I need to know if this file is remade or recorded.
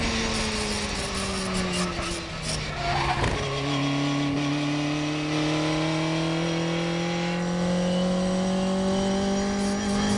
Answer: recorded